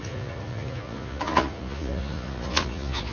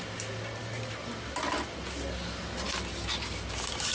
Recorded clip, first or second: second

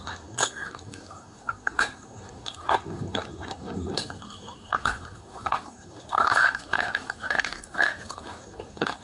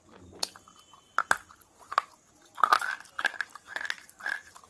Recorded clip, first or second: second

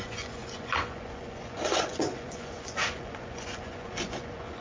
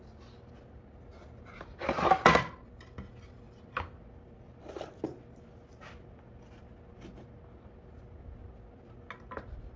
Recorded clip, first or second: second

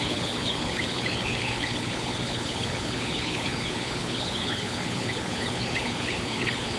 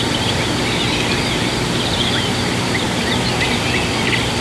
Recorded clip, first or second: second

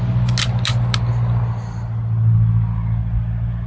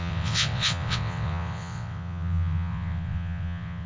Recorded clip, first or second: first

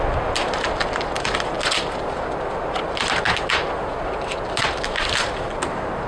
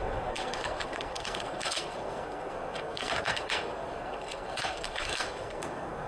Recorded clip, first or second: first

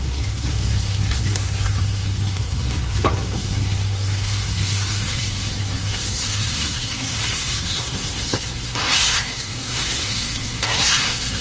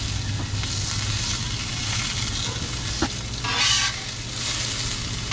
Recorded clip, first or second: second